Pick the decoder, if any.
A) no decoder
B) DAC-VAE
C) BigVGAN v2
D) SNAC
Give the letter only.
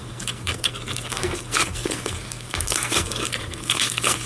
D